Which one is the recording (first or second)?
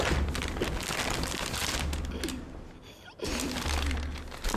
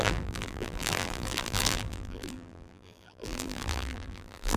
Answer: first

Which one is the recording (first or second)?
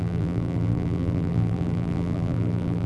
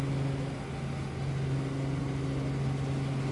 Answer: second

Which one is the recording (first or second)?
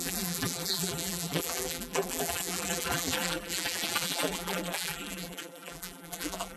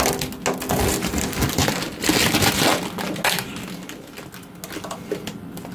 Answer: second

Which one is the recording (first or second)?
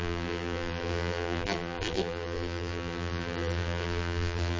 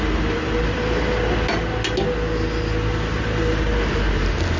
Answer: second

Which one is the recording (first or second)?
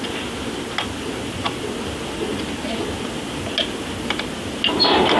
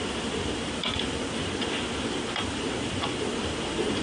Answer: first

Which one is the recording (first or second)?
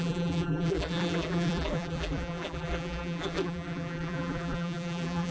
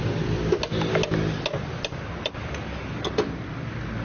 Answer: second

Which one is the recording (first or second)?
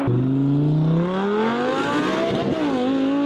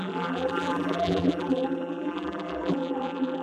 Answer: first